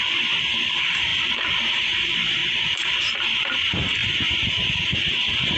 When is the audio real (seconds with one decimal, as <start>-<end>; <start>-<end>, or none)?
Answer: 0.0-1.1; 1.7-2.4; 3.0-4.0; 5.1-5.6